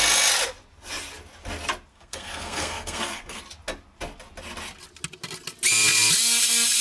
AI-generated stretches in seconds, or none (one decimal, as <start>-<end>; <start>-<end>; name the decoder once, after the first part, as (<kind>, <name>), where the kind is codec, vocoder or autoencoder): 1.9-3.4 (codec, SNAC)